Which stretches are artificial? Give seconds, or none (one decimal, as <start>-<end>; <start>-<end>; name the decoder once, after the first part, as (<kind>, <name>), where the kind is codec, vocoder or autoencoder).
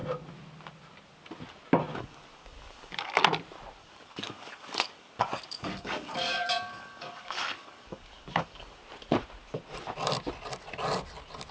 1.9-3.2 (codec, DAC); 3.8-8.8